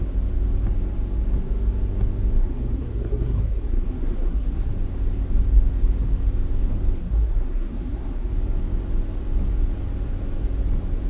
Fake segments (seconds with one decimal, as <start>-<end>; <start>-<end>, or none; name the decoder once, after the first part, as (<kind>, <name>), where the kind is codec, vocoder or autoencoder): 2.4-4.7 (codec, SNAC); 7.0-8.3